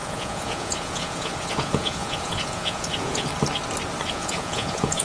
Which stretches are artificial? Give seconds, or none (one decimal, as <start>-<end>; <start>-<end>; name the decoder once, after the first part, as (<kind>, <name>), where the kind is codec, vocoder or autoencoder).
0.0-3.3 (vocoder, Vocos); 4.1-5.0